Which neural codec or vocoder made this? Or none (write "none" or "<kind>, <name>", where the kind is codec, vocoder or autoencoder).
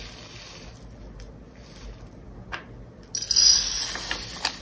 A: none